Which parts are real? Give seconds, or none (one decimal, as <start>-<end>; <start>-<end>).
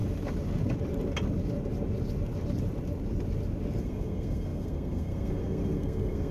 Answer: 0.0-3.8